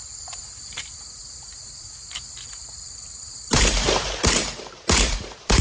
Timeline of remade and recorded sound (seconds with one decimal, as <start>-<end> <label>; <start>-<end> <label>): 0.0-5.6 remade